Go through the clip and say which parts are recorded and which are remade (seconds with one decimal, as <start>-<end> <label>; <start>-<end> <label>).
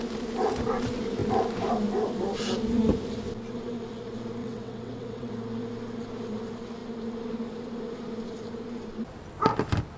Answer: 0.0-4.4 recorded; 4.4-5.3 remade; 5.3-10.0 recorded